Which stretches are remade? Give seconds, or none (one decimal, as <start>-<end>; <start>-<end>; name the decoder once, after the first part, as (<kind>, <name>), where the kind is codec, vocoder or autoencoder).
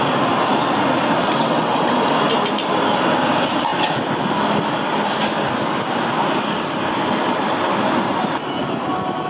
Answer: 1.2-1.9 (vocoder, WaveNeXt)